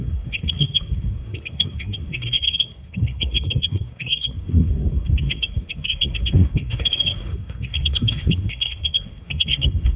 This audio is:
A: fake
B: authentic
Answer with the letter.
A